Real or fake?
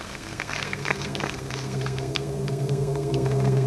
fake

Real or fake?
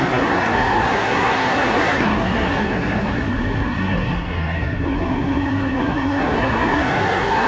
fake